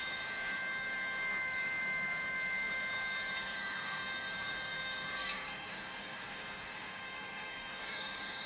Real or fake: fake